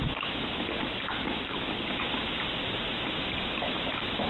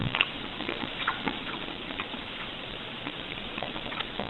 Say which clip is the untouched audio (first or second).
first